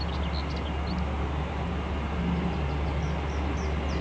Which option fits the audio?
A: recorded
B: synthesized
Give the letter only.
A